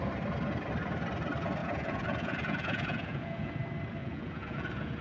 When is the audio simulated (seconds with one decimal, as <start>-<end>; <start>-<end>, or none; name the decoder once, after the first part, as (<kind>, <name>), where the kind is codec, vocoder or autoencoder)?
1.6-3.5 (vocoder, Vocos); 4.0-5.0

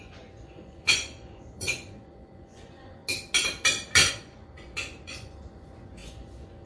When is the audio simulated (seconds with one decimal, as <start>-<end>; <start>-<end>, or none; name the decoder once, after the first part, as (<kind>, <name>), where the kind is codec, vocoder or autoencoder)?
0.0-3.0 (vocoder, Vocos); 4.1-6.7

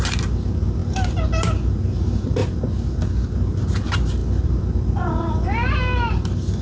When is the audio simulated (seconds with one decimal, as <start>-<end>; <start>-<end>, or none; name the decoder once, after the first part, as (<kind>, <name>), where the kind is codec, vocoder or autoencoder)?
none

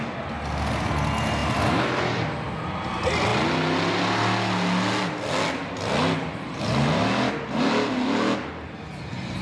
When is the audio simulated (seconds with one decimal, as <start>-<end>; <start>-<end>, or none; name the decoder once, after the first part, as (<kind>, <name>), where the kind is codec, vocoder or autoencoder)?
none

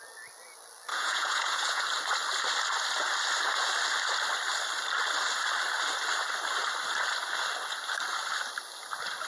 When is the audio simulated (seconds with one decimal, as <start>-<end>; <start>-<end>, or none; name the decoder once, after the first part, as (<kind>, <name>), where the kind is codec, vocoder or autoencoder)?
0.9-1.8 (vocoder, Vocos)